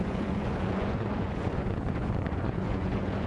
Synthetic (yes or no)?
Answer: yes